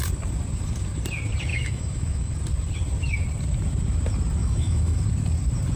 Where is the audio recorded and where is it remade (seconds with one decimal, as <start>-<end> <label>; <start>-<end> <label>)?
0.0-1.5 recorded; 1.5-2.3 remade; 2.3-4.4 recorded; 4.4-5.0 remade; 5.0-5.8 recorded